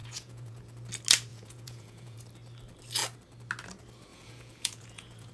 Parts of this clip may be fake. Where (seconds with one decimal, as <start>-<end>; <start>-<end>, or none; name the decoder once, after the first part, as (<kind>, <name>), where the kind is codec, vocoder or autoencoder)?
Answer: 0.0-0.6 (vocoder, Vocos); 1.3-2.2; 4.1-5.3